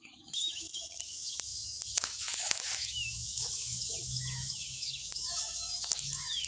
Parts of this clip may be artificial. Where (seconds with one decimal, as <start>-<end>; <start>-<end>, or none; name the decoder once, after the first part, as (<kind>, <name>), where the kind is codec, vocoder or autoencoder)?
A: 0.0-6.5 (autoencoder, DAC-VAE)